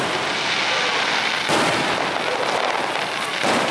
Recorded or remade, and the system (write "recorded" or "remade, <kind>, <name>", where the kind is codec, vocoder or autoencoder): recorded